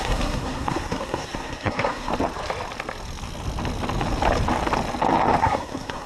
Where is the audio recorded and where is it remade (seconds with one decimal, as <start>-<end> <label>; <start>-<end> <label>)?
0.0-2.1 remade; 2.1-5.4 recorded; 5.4-6.1 remade